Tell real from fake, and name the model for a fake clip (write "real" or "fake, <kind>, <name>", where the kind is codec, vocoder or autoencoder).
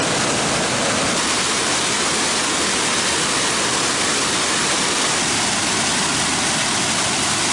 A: real